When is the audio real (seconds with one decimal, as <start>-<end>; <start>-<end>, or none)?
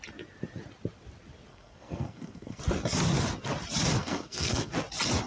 0.0-1.5; 2.6-4.0; 4.7-5.3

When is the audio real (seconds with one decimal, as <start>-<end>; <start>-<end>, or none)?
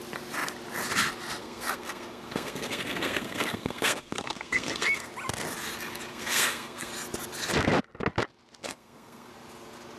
0.0-1.4; 5.1-6.1; 6.9-8.6; 9.3-10.0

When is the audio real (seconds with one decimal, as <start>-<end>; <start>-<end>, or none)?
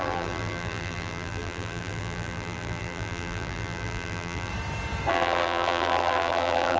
4.5-5.1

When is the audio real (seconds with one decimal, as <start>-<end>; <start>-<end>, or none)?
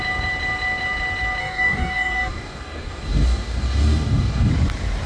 0.0-1.4; 4.5-5.1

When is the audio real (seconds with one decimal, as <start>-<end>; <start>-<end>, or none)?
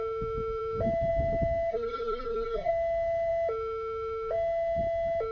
0.0-1.7; 2.7-5.3